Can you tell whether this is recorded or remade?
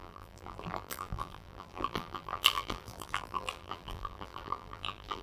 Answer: remade